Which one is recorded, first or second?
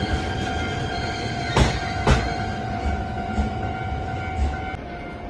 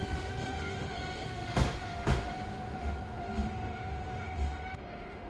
first